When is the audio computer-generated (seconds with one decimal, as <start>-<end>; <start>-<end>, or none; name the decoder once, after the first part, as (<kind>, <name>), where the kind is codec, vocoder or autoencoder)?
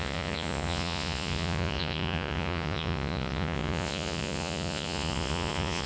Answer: 0.0-5.9 (vocoder, Vocos)